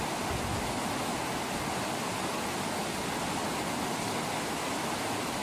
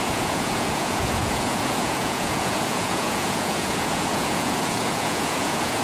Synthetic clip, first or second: second